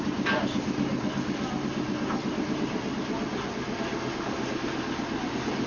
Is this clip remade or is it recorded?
recorded